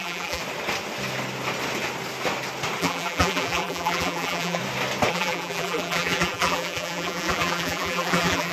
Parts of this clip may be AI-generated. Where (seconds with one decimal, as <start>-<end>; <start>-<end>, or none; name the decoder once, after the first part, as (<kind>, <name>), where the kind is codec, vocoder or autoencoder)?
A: 0.0-0.4 (vocoder, BigVGAN v2); 2.8-4.6; 5.1-8.5

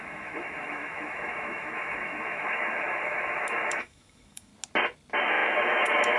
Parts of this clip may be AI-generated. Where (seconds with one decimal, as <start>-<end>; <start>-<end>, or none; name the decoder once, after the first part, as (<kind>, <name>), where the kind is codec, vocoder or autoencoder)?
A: 0.0-4.5 (autoencoder, DAC-VAE); 5.2-6.2

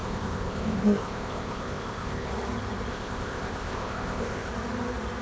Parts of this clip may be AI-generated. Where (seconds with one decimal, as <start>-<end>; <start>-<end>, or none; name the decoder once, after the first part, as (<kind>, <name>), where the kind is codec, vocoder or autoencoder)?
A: 0.0-2.3 (codec, ZipCodec); 2.9-4.5

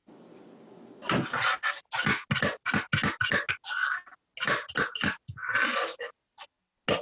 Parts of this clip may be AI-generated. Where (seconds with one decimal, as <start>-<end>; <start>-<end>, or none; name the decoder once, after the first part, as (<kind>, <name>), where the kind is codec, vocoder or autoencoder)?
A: none

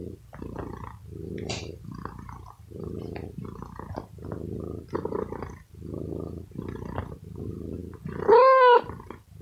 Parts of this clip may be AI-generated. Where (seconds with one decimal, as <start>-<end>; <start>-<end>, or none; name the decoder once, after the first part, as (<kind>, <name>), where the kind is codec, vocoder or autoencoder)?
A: none

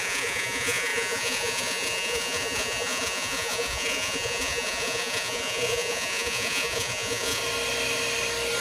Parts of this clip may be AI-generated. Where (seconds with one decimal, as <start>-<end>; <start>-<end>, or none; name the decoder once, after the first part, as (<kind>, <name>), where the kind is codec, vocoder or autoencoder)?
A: 0.0-7.4 (vocoder, Vocos)

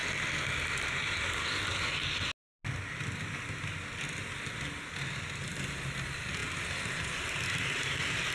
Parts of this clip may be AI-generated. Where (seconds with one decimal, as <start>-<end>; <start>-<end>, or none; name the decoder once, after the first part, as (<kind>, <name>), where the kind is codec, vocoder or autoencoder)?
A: none

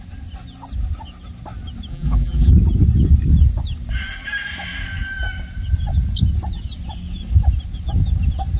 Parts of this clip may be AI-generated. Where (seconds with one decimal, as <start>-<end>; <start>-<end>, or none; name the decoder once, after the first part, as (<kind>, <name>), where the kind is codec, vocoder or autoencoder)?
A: 1.9-2.5 (vocoder, BigVGAN v2)